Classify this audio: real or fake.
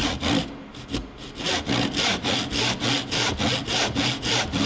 real